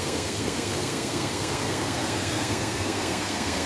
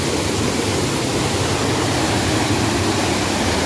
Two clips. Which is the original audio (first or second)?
second